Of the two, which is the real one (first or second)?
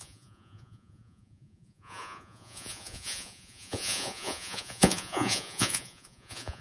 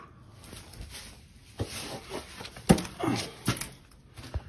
second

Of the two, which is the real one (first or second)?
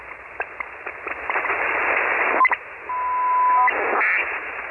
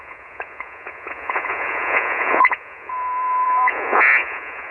first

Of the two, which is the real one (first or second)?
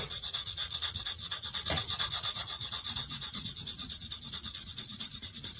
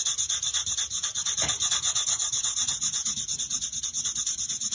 second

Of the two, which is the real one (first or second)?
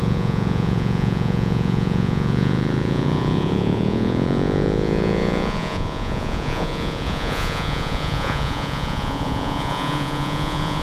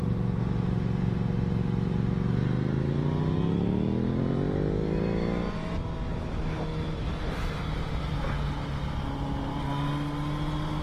second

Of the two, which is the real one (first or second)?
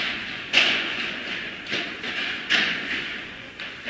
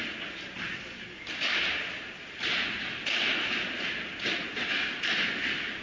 second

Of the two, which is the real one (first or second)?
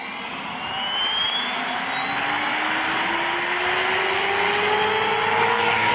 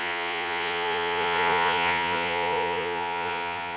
first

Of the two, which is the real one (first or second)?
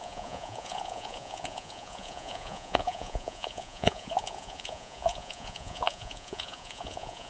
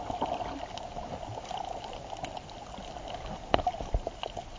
second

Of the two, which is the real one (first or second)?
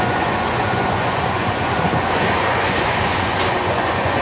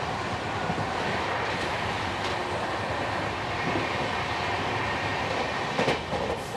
second